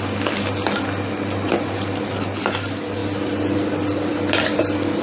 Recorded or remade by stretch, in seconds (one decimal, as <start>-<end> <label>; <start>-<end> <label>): 0.0-5.0 recorded

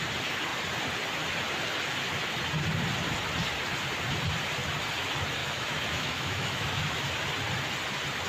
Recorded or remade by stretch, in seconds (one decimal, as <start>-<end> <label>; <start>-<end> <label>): 0.0-5.4 recorded; 5.4-7.0 remade; 7.0-8.3 recorded

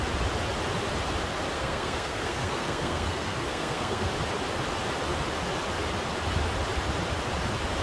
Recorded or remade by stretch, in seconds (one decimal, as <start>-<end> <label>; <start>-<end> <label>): 0.0-1.5 recorded; 1.5-4.1 remade; 4.1-7.8 recorded